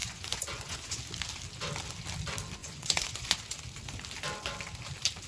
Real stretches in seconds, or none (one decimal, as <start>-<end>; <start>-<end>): 1.0-2.6; 3.6-5.3